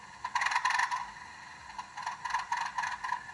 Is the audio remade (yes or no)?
no